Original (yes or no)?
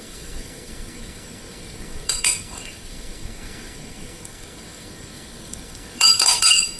no